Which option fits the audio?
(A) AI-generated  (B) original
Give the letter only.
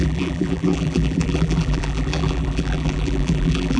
A